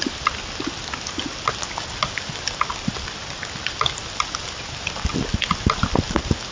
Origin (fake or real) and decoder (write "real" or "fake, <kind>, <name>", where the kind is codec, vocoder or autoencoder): real